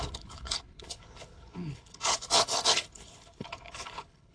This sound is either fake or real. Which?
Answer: fake